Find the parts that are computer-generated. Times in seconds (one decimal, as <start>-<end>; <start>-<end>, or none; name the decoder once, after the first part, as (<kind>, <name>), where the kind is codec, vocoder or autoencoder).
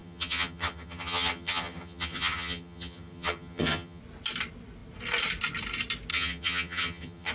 0.0-4.0 (vocoder, HiFi-GAN); 6.1-7.3